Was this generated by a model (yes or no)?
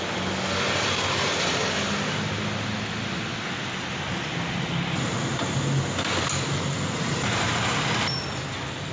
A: no